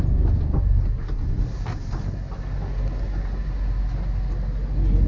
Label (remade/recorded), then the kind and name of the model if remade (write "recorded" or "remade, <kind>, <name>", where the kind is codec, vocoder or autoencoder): recorded